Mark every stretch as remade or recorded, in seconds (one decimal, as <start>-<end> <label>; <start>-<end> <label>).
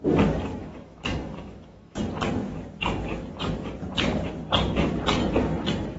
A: 0.0-0.6 recorded; 0.6-2.0 remade; 2.0-6.0 recorded